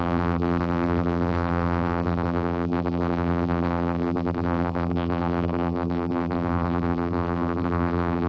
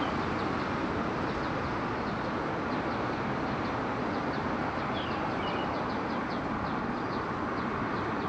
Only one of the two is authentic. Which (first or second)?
second